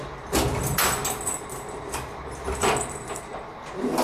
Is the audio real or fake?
real